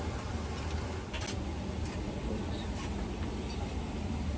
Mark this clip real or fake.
real